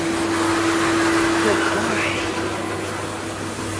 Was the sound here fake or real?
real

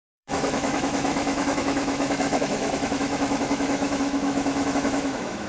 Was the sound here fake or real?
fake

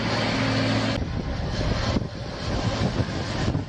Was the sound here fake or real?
real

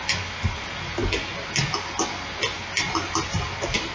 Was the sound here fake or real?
real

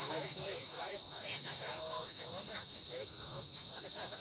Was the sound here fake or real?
fake